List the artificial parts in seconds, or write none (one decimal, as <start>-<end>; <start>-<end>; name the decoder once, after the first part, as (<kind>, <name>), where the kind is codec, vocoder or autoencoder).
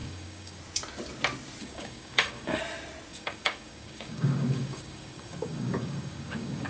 0.0-0.6 (codec, DAC); 1.6-2.6; 3.1-6.7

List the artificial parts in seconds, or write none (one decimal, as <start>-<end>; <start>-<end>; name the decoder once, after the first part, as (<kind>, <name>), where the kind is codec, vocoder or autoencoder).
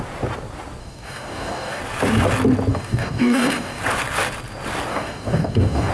0.8-1.8 (codec, DAC); 2.7-3.8; 4.9-5.9